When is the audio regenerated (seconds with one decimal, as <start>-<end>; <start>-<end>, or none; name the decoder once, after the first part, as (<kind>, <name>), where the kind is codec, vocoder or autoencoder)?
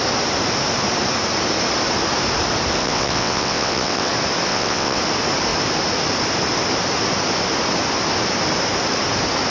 2.8-4.1 (vocoder, WaveNeXt); 4.5-5.0